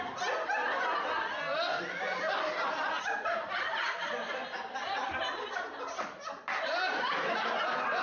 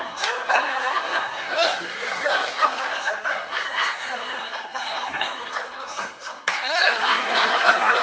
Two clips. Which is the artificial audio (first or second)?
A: second